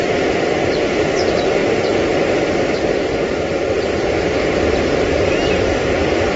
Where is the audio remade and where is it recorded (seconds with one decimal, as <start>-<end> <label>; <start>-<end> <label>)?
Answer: 0.0-6.4 remade